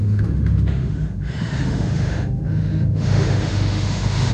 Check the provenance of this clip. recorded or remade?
remade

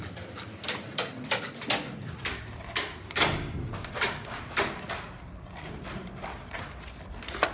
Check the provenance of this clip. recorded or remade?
recorded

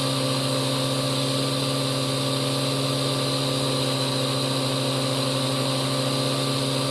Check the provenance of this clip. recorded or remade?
recorded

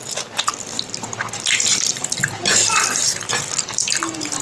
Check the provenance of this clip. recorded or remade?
recorded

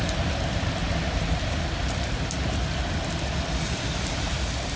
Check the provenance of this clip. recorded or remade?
recorded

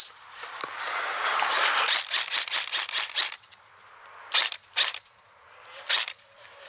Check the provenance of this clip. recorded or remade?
remade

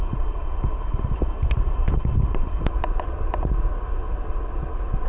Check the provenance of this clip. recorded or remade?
recorded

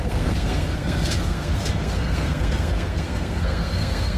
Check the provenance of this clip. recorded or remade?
remade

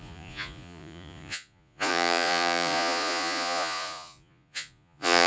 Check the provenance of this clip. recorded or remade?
remade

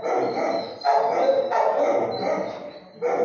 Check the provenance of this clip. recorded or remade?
recorded